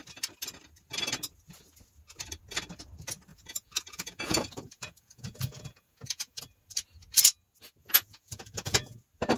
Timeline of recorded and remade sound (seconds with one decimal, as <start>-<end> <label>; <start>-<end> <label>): 0.0-3.3 recorded; 3.3-6.4 remade; 6.4-7.8 recorded; 7.8-9.0 remade; 9.0-9.4 recorded